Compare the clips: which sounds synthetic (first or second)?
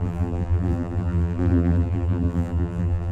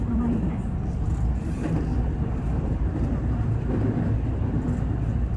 first